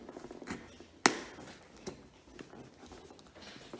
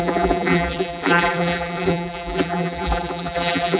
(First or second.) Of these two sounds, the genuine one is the first